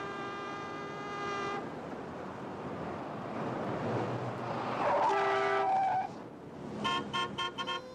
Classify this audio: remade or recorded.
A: recorded